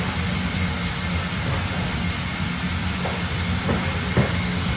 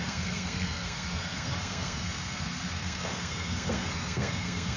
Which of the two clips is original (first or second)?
first